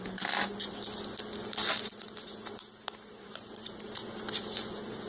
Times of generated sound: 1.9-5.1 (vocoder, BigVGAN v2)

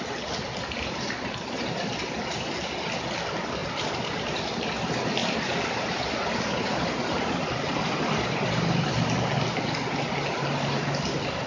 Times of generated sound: 3.6-4.4 (vocoder, BigVGAN v2)

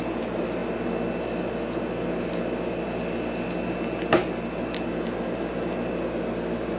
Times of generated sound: none

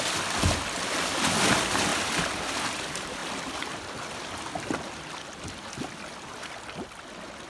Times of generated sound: none

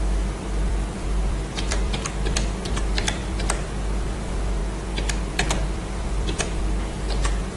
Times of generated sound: 0.0-4.6 (vocoder, BigVGAN v2); 5.3-7.6

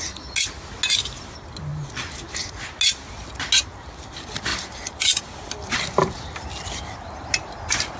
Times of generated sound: 4.5-6.8 (vocoder, BigVGAN v2)